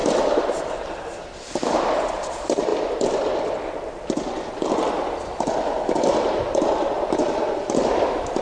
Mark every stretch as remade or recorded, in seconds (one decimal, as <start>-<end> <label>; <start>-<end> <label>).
0.0-8.4 remade